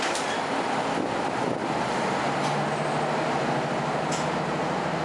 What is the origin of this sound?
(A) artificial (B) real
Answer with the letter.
B